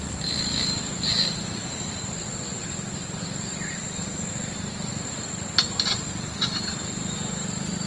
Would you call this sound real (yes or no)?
yes